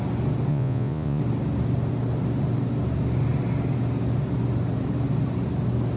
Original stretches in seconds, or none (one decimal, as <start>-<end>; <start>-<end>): 0.0-0.5; 1.2-6.0